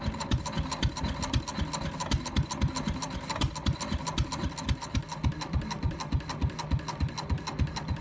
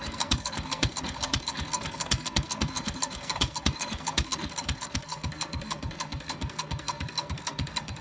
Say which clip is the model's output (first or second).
second